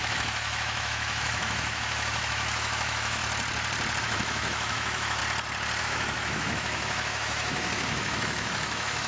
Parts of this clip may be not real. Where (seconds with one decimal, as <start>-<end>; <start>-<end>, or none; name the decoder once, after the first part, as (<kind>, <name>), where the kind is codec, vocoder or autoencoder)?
0.0-3.2 (autoencoder, DAC-VAE); 4.0-5.2; 5.8-9.1